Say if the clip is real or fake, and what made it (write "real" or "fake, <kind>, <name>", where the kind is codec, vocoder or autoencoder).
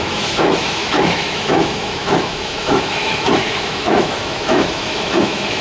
fake, autoencoder, DAC-VAE